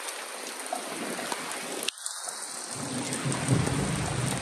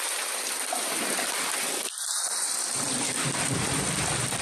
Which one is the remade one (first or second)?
second